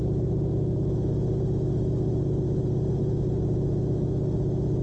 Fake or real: real